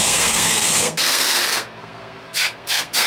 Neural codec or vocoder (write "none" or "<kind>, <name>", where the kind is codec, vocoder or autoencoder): codec, SNAC